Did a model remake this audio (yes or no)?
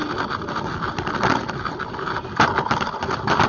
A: no